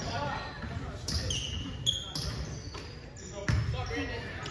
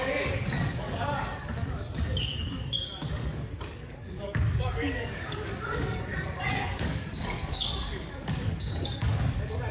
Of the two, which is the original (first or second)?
first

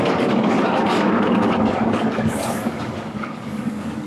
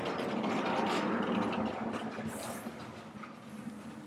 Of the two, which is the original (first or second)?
second